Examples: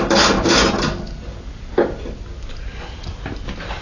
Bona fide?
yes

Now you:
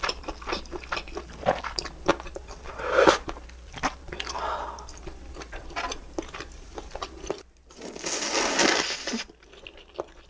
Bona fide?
yes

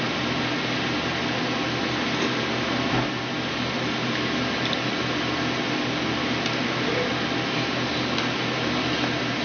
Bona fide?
yes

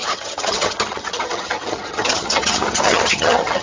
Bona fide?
no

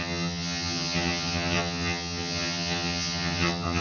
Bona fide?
no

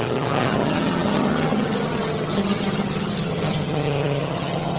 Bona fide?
no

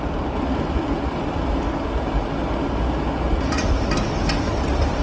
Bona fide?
yes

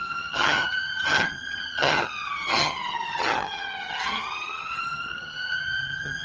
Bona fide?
no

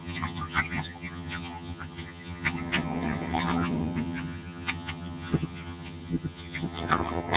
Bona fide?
no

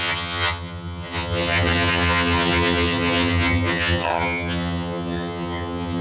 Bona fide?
no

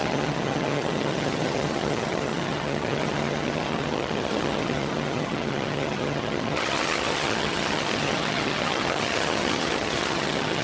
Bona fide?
no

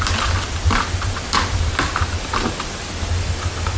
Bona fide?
yes